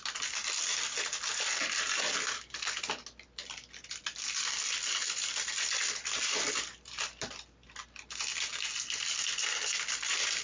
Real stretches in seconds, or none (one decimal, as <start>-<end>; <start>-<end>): 0.0-10.4